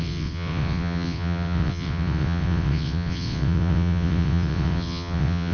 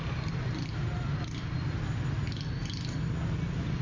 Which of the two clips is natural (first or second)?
second